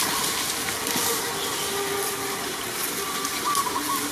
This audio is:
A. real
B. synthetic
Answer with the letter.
A